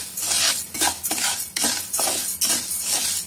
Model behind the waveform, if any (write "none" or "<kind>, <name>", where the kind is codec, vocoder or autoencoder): none